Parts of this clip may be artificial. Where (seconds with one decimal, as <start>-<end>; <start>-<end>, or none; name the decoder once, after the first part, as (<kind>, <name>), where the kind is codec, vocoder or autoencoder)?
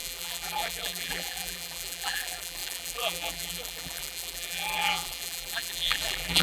0.0-6.4 (vocoder, BigVGAN v2)